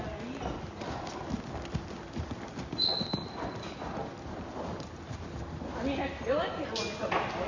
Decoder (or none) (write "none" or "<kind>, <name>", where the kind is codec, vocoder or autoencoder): none